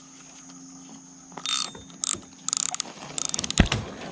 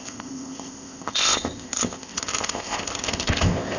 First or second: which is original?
first